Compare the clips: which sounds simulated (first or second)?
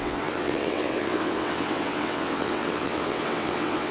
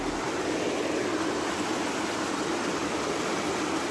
first